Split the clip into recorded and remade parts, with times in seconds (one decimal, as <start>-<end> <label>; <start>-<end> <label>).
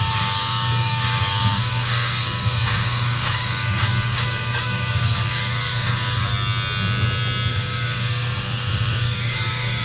0.0-6.3 remade; 6.3-7.5 recorded; 7.5-9.8 remade